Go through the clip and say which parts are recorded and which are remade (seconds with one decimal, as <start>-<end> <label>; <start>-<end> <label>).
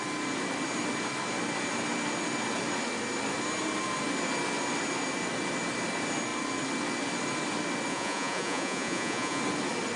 0.0-7.9 recorded; 7.9-9.4 remade; 9.4-10.0 recorded